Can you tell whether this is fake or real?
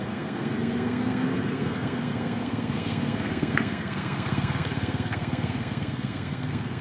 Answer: fake